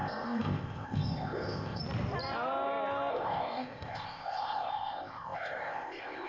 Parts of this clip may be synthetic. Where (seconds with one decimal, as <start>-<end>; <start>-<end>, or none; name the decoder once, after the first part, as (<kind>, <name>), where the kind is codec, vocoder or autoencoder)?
0.0-1.8 (codec, ZipCodec); 3.1-6.3